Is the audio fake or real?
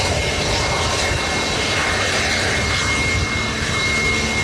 real